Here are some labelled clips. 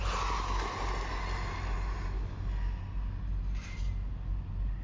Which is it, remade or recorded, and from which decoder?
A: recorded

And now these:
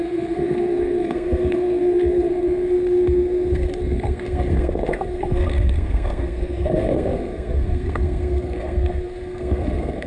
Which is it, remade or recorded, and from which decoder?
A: remade, codec, SNAC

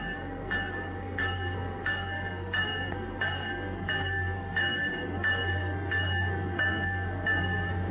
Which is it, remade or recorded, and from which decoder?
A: remade, codec, SNAC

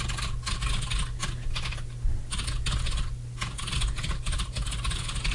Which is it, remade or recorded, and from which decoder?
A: recorded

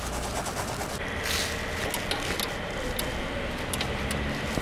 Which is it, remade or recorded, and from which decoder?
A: recorded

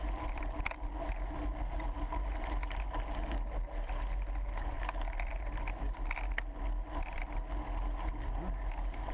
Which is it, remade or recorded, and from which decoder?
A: recorded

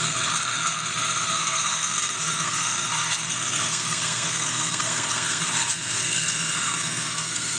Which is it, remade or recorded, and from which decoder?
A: remade, codec, SNAC